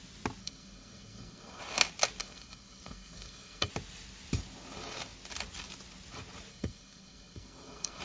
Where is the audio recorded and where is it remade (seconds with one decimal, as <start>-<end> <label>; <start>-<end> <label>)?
0.0-0.4 recorded; 0.4-1.6 remade; 1.6-2.2 recorded; 2.2-3.7 remade; 3.7-6.5 recorded; 6.5-8.0 remade